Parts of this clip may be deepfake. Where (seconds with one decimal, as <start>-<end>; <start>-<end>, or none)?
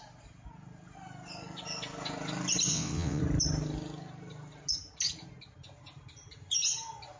2.7-3.2